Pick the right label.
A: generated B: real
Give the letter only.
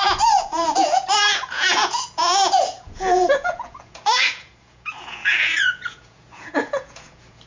A